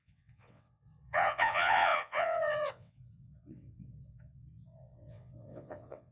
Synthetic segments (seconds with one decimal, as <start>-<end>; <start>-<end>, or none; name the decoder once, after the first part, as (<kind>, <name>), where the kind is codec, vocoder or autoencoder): 0.0-6.1 (vocoder, WaveNeXt)